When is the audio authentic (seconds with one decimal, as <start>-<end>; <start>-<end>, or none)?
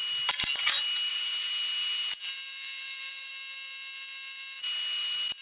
0.0-1.1; 3.3-5.4